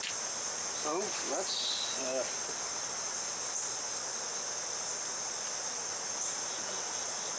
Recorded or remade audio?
recorded